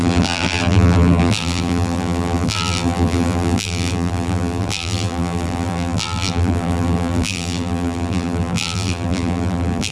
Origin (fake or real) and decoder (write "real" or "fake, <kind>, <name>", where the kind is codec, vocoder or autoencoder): fake, vocoder, BigVGAN v2